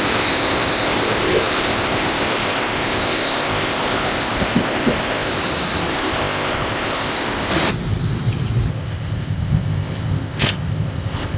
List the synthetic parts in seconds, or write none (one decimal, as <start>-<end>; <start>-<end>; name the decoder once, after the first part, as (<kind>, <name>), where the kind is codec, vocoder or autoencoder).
0.0-5.3 (codec, ZipCodec); 5.9-7.5; 8.7-11.4